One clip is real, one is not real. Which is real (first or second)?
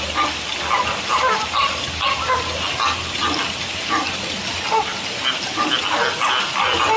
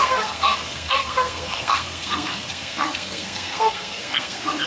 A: first